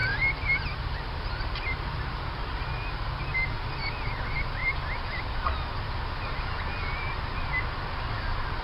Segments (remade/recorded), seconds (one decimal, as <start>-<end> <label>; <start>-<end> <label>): 0.0-8.6 recorded